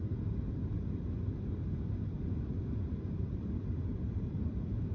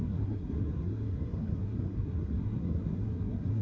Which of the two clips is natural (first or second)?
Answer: first